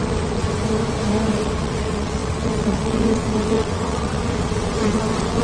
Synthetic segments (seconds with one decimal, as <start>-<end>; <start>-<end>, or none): 0.0-0.6; 1.3-5.4